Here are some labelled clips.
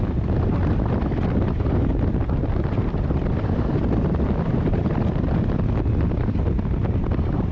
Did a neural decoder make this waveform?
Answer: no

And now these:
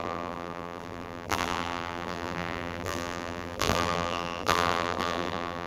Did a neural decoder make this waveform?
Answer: yes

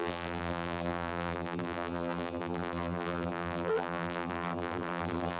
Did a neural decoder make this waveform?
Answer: yes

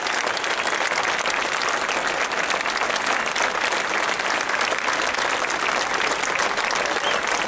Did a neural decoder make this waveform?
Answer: no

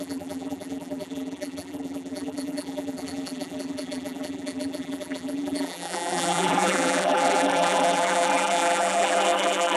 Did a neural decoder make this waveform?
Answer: yes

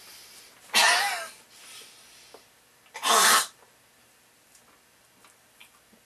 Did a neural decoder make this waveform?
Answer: no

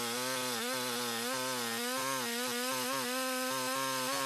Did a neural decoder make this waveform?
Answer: no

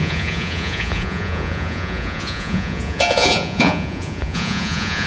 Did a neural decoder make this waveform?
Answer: yes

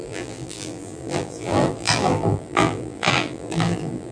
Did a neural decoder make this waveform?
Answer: yes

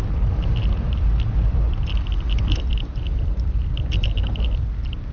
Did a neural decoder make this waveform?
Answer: yes